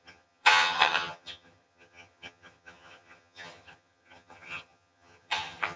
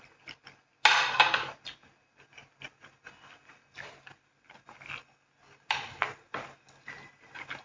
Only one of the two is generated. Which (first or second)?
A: first